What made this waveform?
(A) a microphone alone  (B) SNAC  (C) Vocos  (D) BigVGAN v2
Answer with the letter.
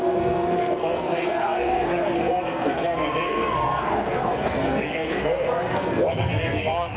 B